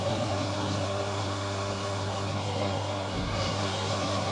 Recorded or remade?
remade